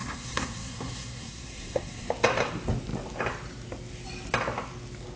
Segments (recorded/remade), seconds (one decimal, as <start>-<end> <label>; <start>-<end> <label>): 0.0-2.1 remade; 2.1-5.2 recorded